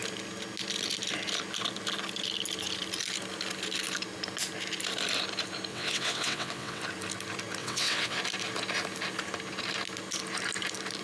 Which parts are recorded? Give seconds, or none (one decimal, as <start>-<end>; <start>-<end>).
0.0-5.7; 6.8-7.6; 8.2-11.0